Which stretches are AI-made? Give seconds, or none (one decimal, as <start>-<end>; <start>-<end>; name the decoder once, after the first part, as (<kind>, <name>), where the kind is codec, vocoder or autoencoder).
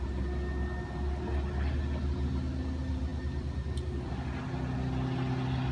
none